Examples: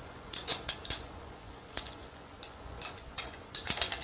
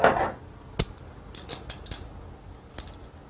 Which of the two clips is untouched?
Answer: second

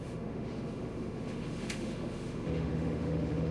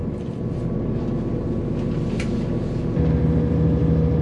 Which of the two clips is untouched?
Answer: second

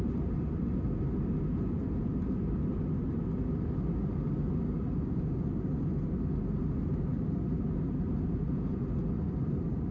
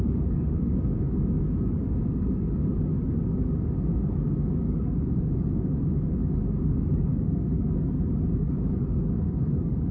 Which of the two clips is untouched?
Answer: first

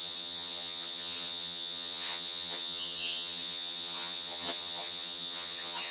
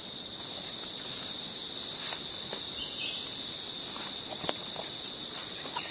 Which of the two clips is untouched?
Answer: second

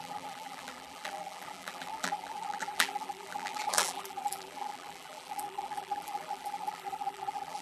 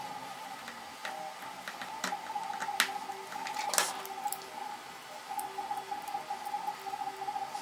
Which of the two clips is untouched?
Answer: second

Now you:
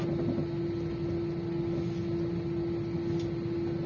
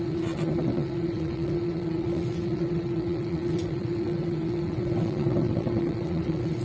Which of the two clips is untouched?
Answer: first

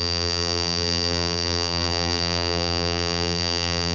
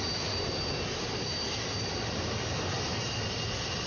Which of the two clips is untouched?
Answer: second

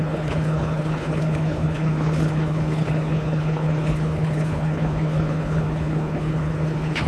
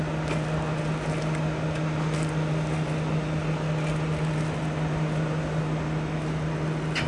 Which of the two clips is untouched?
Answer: second